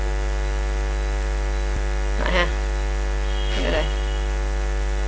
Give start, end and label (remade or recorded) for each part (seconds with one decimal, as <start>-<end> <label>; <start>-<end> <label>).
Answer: 0.0-5.1 recorded